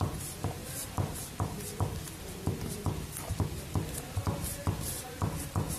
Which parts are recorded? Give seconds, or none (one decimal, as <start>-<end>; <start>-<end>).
0.0-5.8